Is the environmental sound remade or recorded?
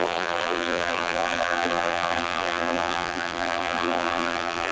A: remade